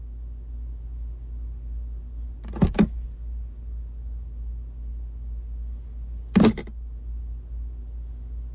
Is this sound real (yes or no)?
yes